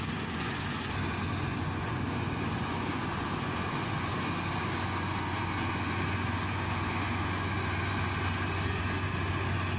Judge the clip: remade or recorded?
remade